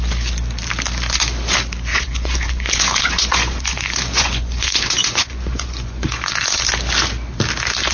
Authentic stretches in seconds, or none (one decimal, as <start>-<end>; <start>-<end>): 0.0-1.9; 6.6-7.9